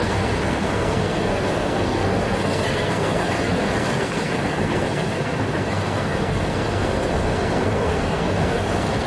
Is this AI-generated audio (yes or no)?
yes